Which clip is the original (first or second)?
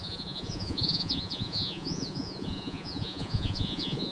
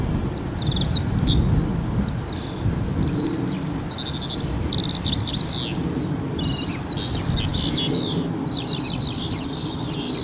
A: second